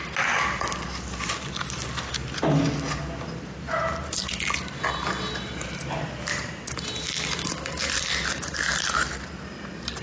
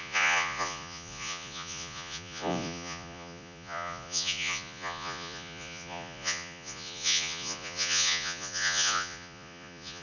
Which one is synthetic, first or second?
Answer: second